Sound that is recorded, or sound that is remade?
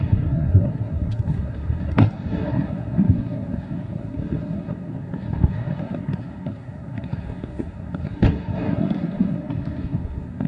remade